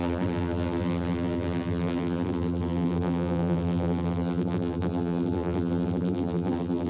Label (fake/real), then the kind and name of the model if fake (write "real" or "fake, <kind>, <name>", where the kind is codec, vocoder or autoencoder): fake, vocoder, BigVGAN v2